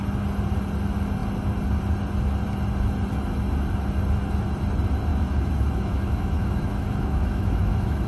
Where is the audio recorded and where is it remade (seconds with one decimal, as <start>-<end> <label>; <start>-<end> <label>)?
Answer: 0.0-5.1 recorded; 5.1-8.1 remade